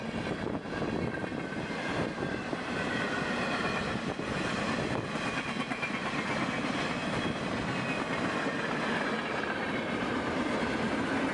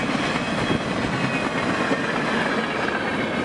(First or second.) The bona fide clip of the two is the second